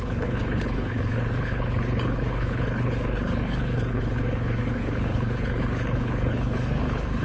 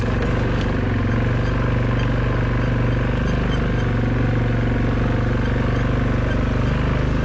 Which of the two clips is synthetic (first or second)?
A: first